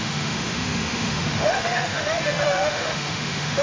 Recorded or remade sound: remade